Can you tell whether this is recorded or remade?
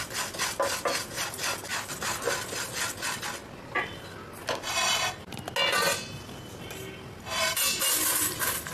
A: recorded